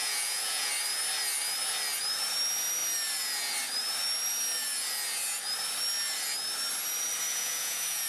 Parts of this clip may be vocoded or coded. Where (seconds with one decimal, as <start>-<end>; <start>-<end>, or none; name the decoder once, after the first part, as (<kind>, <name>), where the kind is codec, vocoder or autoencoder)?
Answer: 0.0-0.7 (vocoder, Vocos); 7.3-8.1